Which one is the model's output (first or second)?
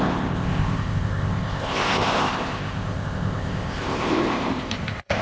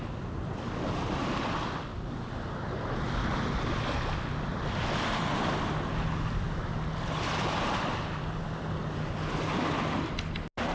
first